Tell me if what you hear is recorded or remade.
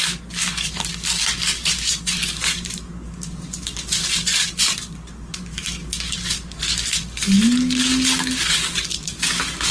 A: remade